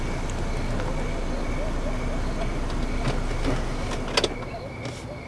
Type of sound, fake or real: real